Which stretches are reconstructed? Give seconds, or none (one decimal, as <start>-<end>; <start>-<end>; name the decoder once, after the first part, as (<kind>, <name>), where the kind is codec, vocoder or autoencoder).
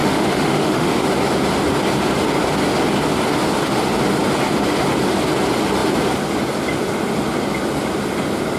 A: 0.0-1.1 (autoencoder, DAC-VAE)